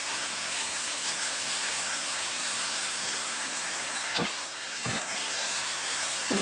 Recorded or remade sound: remade